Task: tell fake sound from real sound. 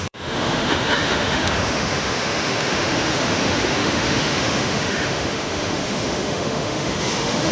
fake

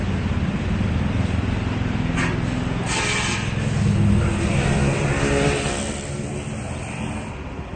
real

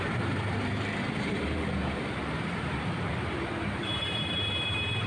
fake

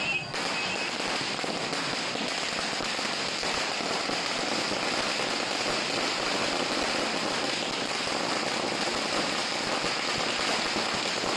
real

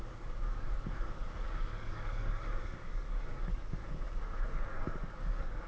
fake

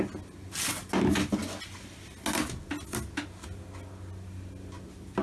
real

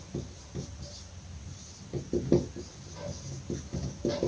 real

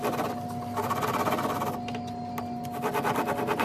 real